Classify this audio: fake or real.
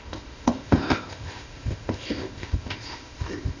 fake